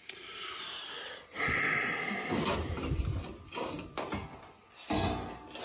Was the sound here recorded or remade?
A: recorded